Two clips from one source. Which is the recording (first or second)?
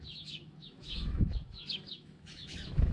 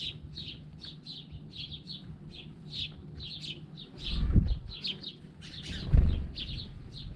second